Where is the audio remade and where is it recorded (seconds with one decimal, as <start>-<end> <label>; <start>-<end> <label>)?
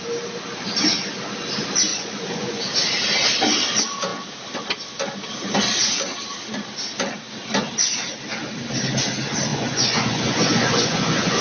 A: 0.0-1.9 recorded; 1.9-2.6 remade; 2.6-9.5 recorded; 9.5-11.4 remade